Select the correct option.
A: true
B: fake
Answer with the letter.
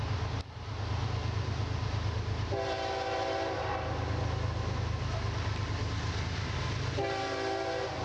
A